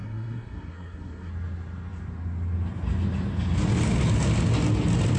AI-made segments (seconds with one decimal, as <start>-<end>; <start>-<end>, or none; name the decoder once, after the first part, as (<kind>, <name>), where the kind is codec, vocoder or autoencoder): 0.0-1.3 (codec, SNAC)

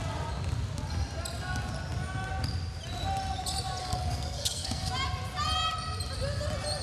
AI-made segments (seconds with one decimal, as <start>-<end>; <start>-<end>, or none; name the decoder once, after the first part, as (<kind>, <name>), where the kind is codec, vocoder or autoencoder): 3.8-4.9 (codec, SNAC)